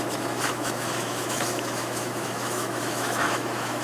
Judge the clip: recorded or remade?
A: remade